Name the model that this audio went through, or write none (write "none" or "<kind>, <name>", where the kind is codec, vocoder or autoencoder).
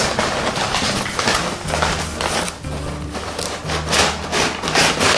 none